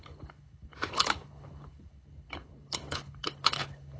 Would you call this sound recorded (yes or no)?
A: no